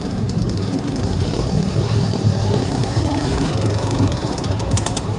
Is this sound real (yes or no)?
no